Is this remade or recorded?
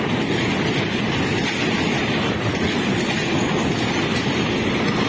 recorded